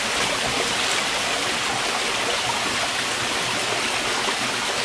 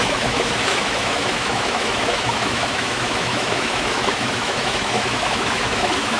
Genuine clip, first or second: first